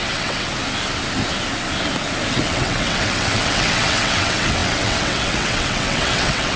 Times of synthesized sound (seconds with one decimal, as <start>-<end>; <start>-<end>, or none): 0.0-0.5; 2.3-6.6